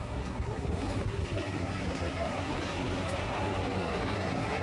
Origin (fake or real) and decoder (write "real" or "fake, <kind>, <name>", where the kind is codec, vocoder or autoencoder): fake, codec, SNAC